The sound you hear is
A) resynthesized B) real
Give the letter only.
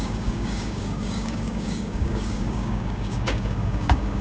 A